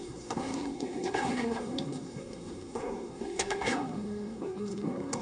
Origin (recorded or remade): remade